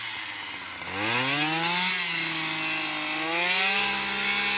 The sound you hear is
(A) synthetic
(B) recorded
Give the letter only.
B